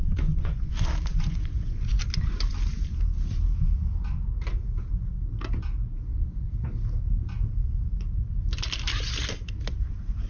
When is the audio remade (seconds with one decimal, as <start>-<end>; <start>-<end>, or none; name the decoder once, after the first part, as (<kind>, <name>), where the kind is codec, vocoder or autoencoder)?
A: 0.0-0.7 (vocoder, Vocos); 1.1-2.0